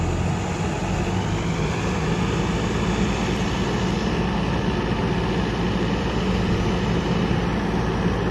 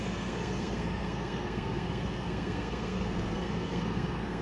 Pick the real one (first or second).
first